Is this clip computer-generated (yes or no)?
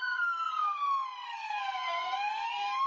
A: yes